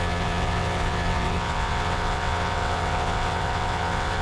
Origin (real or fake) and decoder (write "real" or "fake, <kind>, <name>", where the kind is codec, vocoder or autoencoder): fake, vocoder, WaveNeXt